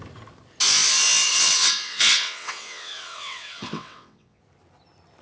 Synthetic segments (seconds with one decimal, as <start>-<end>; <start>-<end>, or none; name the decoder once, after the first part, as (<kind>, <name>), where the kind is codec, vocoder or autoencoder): 1.3-4.4 (vocoder, WaveNeXt)